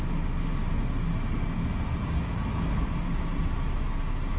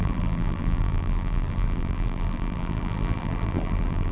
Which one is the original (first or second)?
first